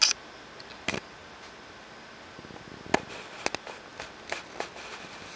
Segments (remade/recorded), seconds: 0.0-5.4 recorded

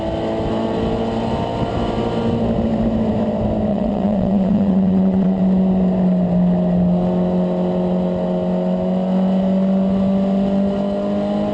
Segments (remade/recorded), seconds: 0.0-3.7 recorded; 3.7-5.4 remade; 5.4-11.5 recorded

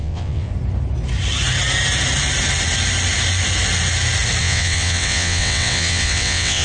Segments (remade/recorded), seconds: 0.0-0.5 remade; 0.5-4.4 recorded; 4.4-6.6 remade

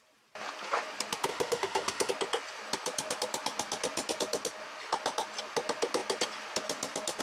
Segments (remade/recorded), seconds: 0.0-1.3 recorded; 1.3-2.1 remade; 2.1-7.2 recorded

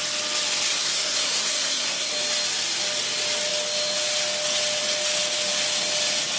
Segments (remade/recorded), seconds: 0.0-0.8 recorded; 0.8-2.1 remade; 2.1-6.4 recorded